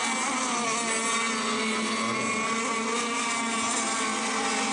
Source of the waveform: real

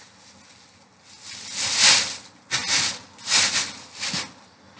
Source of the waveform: real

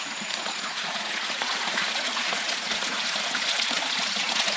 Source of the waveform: fake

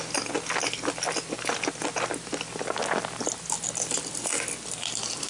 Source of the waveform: real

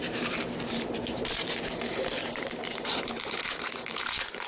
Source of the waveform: fake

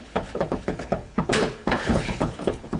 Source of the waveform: fake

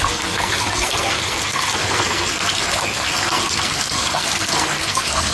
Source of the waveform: fake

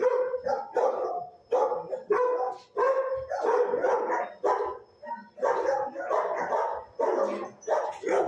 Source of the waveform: real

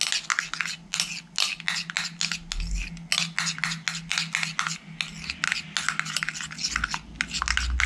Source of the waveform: real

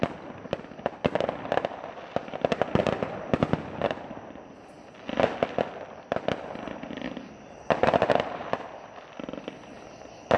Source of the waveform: real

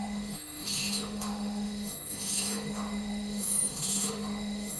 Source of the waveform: fake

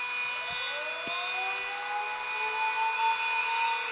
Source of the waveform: real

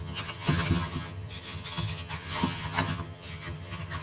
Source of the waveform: fake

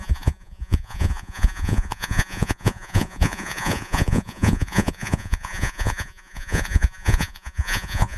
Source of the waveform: fake